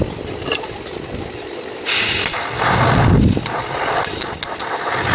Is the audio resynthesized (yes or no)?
no